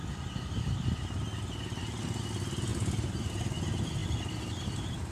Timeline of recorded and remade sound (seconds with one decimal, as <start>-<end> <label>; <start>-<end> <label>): 0.0-5.1 recorded